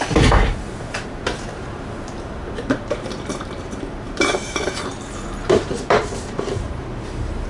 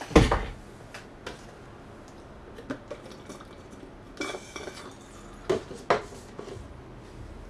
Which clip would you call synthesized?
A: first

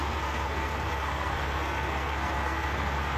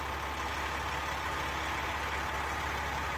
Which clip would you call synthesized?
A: first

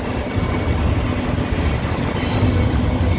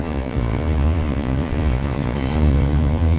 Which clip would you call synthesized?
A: second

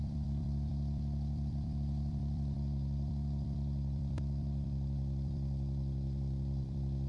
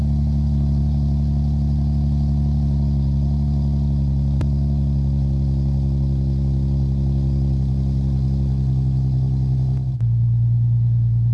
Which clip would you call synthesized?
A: first